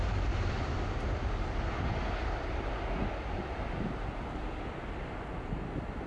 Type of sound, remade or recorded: recorded